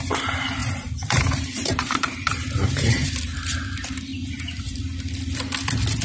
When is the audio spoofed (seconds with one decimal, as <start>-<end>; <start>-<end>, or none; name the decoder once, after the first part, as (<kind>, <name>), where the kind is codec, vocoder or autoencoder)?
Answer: 0.6-3.1 (vocoder, BigVGAN v2); 4.1-4.8